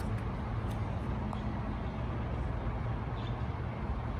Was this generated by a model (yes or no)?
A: no